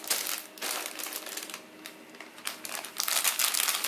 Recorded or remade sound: recorded